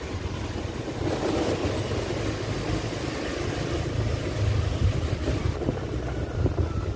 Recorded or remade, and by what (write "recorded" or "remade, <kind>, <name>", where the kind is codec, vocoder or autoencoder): recorded